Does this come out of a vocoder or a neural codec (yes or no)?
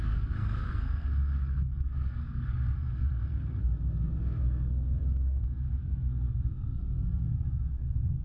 yes